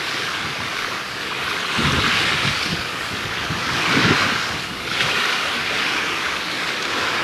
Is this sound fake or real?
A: fake